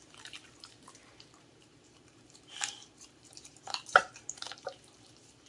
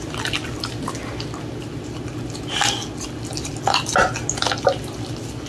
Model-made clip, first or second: first